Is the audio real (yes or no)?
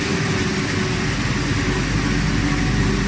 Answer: yes